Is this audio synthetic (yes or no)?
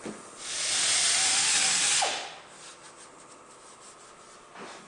no